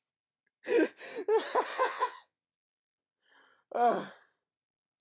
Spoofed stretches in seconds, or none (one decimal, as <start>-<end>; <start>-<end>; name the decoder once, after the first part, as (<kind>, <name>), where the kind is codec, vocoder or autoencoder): 1.7-3.2 (vocoder, WaveNeXt)